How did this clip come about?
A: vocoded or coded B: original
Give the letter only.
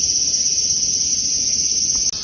B